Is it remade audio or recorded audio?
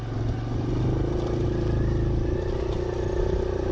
recorded